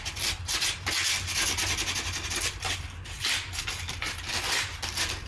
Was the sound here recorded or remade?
recorded